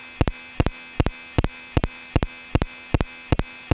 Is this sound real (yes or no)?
yes